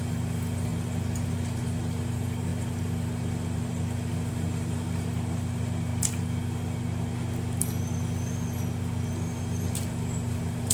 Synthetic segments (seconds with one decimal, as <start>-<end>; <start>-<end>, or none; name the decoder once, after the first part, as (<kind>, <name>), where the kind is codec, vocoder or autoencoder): 0.0-0.7 (vocoder, BigVGAN v2); 1.3-5.9; 9.1-10.7